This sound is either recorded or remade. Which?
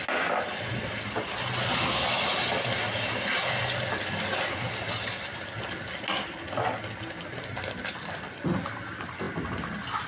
recorded